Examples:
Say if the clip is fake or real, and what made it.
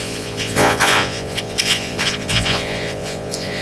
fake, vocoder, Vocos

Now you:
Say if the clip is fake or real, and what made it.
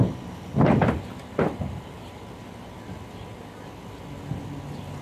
real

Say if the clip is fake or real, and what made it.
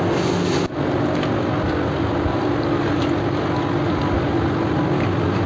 real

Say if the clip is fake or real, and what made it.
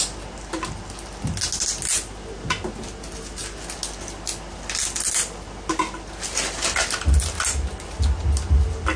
real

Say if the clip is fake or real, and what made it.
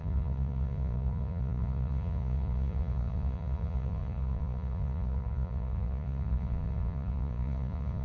fake, vocoder, Vocos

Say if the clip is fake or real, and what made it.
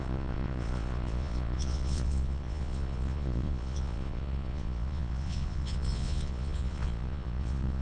fake, vocoder, Vocos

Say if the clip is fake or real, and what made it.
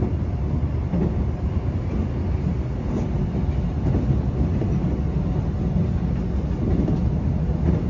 real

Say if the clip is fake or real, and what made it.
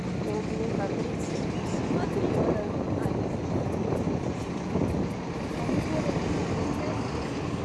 real